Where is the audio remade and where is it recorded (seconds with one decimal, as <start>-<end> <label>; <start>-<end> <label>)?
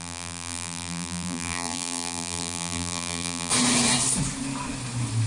0.0-3.5 remade; 3.5-5.3 recorded